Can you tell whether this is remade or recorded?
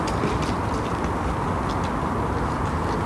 recorded